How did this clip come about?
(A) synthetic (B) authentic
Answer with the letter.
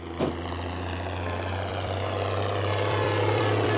A